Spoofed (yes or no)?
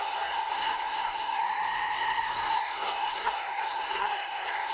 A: yes